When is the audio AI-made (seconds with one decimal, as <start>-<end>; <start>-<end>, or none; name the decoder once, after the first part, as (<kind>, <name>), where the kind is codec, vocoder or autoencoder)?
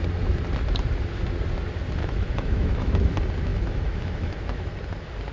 2.0-3.1 (autoencoder, DAC-VAE); 3.5-4.7